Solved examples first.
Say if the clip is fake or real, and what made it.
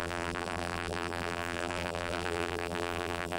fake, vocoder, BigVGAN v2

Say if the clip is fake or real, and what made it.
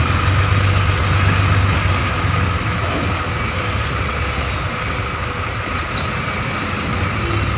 real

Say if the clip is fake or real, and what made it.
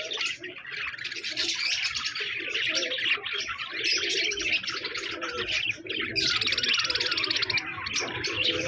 real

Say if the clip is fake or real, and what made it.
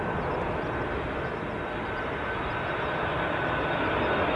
real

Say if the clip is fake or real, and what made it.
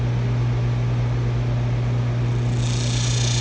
real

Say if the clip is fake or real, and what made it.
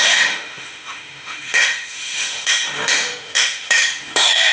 fake, autoencoder, DAC-VAE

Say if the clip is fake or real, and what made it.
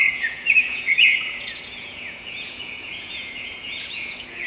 fake, vocoder, Vocos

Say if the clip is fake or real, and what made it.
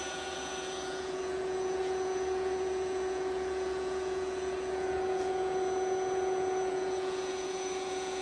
fake, vocoder, Vocos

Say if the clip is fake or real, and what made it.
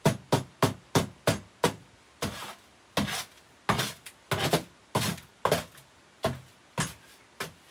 real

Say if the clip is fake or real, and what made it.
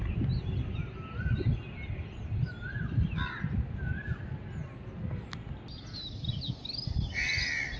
real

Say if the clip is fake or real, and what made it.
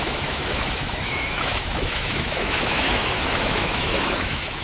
fake, autoencoder, DAC-VAE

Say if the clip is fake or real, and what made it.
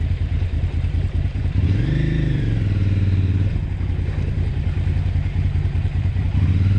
fake, vocoder, BigVGAN v2